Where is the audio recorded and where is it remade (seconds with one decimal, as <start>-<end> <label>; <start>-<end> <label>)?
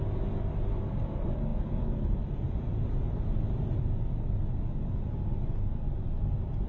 0.0-6.7 recorded